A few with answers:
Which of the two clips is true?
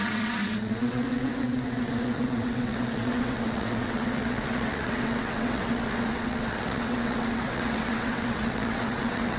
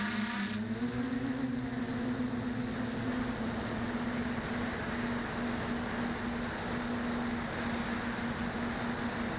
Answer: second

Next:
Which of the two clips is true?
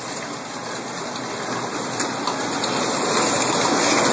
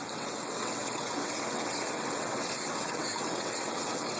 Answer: first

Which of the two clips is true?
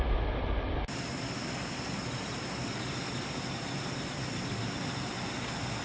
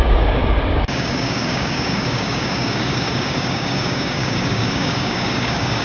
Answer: first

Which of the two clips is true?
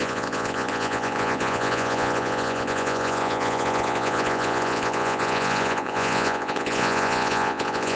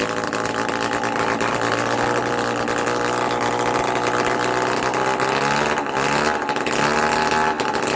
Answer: second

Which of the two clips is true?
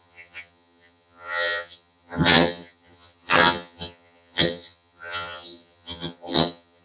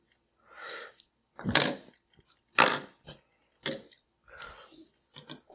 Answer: second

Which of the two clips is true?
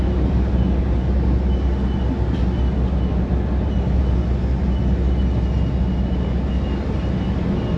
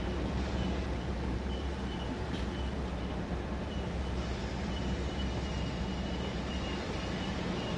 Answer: first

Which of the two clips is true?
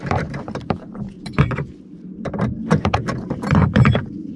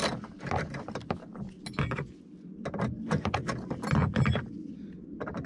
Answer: second